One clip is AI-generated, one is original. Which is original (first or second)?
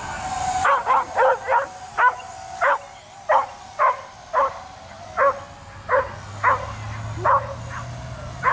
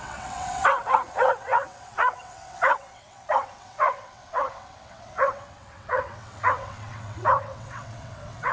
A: first